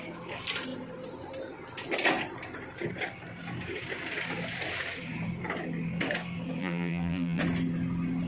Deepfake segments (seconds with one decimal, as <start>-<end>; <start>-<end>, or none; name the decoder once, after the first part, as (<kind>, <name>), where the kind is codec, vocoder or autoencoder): 6.6-7.4 (vocoder, BigVGAN v2)